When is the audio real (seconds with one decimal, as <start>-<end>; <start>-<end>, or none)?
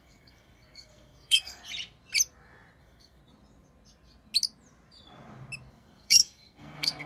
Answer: 1.6-2.8; 3.2-5.7